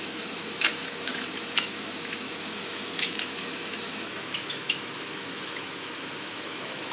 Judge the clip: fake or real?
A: fake